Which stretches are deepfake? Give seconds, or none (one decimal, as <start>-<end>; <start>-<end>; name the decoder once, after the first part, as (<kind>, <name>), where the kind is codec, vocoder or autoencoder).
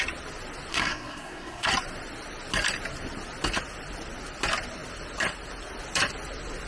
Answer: 0.7-1.7 (codec, SNAC)